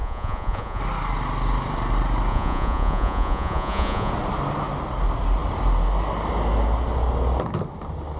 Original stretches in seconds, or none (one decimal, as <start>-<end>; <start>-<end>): 0.8-2.3; 4.1-8.2